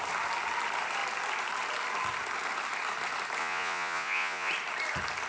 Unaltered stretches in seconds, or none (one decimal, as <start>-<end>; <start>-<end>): 0.0-3.4; 4.5-5.3